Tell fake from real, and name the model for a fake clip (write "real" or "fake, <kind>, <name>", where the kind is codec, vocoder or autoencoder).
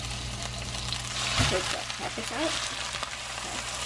real